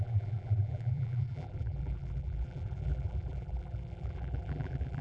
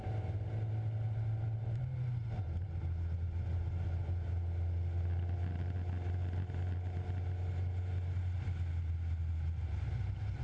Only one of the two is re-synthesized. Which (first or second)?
first